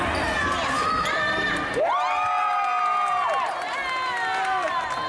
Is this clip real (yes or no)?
yes